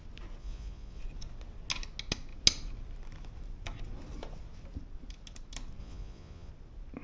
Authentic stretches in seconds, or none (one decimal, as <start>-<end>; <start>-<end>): 0.0-0.4; 1.0-5.8; 6.5-7.0